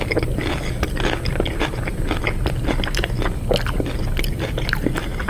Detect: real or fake real